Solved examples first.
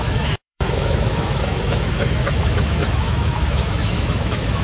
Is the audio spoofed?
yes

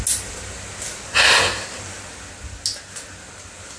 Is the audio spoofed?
no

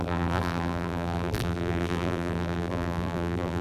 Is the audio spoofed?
yes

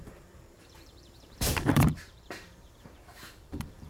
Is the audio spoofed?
yes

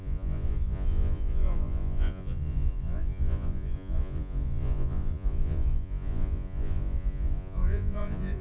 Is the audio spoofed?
yes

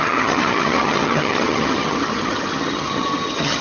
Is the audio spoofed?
yes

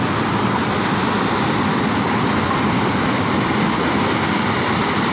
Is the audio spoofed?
no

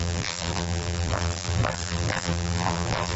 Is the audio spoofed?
yes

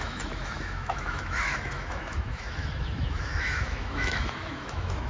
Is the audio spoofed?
yes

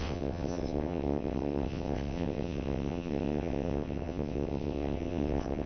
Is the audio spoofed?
yes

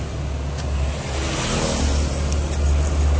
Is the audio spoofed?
no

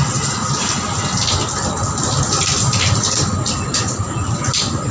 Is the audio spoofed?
no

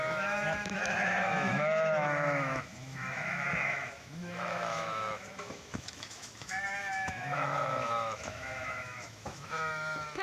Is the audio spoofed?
yes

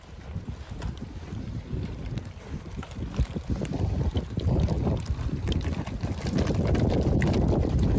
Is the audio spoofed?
no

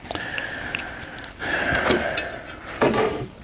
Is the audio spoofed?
no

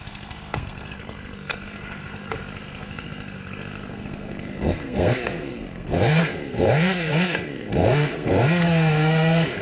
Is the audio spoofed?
yes